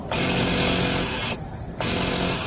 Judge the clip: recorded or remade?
recorded